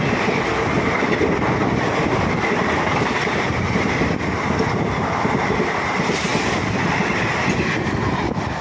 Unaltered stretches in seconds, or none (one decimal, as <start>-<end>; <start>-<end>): 0.0-8.6